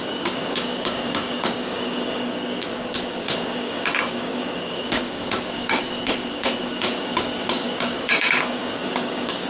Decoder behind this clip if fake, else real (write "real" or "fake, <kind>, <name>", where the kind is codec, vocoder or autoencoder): fake, codec, DAC